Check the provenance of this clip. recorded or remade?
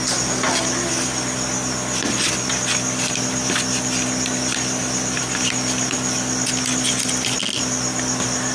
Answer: recorded